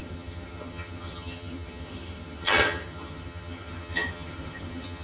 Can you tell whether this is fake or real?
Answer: fake